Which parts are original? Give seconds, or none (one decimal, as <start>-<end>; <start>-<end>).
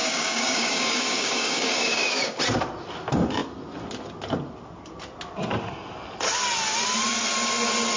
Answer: 2.4-8.0